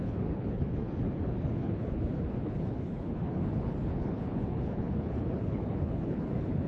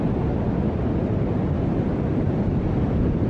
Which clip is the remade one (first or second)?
first